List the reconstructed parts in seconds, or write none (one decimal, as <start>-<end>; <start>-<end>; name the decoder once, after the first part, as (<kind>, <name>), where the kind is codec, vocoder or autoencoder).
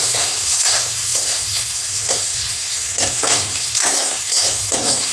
0.0-5.1 (codec, SNAC)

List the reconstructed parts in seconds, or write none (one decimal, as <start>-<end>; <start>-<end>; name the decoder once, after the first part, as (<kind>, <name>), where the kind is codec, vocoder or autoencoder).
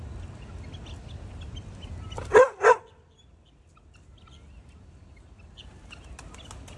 none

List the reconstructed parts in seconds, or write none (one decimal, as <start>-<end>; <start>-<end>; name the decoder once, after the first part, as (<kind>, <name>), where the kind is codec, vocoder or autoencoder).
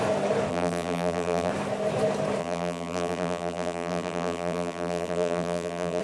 0.5-1.5 (vocoder, BigVGAN v2); 2.4-6.0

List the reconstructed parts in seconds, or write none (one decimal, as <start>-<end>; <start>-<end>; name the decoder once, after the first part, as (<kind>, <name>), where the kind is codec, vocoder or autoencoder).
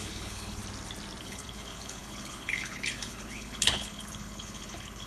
0.0-0.6 (codec, HILCodec); 1.2-5.1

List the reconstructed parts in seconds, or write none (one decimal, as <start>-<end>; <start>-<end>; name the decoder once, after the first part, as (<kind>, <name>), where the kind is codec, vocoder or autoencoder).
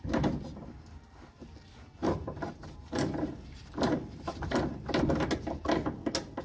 2.0-4.6 (vocoder, BigVGAN v2)